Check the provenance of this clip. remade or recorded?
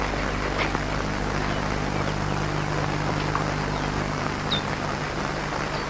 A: recorded